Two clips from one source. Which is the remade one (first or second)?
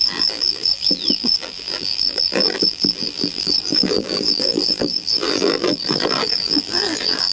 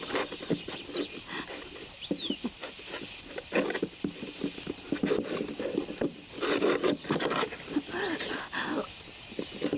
first